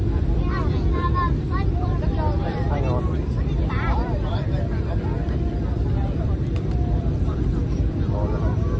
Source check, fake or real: fake